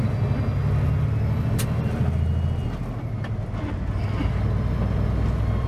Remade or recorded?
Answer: recorded